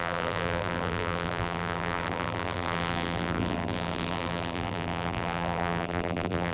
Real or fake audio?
fake